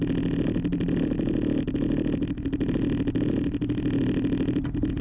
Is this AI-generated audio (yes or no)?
no